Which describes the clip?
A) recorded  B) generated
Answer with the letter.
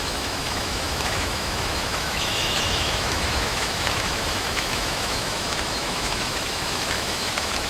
B